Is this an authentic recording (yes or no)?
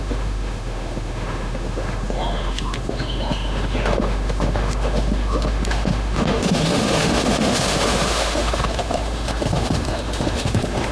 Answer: no